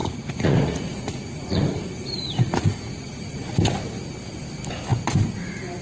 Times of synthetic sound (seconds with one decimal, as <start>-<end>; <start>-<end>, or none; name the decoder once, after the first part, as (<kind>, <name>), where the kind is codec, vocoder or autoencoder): 0.0-3.5 (vocoder, Vocos)